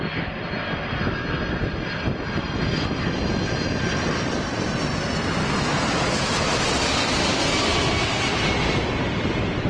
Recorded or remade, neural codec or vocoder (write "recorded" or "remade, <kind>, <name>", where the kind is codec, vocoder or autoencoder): recorded